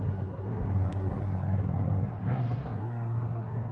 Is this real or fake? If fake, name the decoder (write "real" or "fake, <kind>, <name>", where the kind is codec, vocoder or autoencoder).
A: fake, codec, SNAC